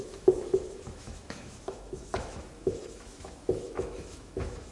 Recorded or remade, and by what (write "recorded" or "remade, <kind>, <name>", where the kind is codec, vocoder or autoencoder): remade, autoencoder, DAC-VAE